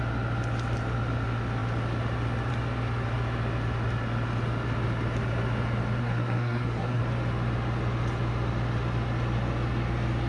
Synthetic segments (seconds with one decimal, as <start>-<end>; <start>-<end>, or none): 6.0-7.0